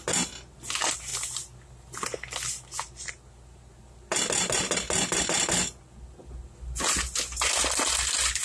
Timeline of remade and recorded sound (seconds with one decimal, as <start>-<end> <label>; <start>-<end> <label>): 0.0-8.4 recorded